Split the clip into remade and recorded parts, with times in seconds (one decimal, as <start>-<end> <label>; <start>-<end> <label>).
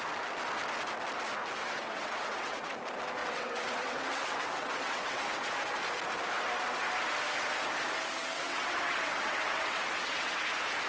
0.0-1.6 recorded; 1.6-2.7 remade; 2.7-3.2 recorded; 3.2-5.5 remade; 5.5-8.2 recorded; 8.2-10.4 remade; 10.4-10.9 recorded